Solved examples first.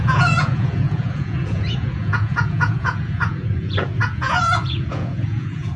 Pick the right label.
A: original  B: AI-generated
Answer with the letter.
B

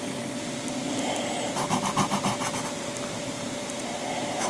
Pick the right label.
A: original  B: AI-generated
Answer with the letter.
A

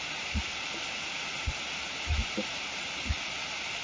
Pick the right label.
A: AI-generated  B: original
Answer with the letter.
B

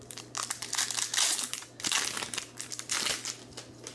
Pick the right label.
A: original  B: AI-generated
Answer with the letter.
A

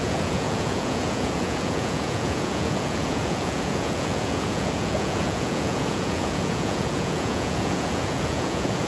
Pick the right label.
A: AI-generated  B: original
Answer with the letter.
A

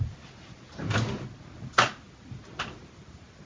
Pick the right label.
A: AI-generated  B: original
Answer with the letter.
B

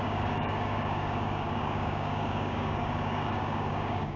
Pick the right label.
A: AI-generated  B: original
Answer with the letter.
A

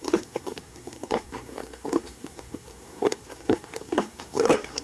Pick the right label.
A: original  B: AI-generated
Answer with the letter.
B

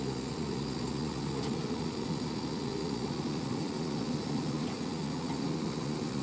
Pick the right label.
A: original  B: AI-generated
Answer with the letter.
B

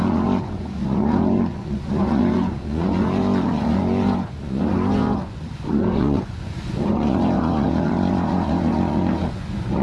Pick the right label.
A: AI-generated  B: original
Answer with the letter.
A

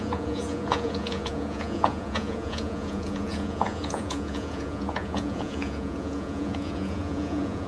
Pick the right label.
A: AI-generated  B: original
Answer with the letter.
A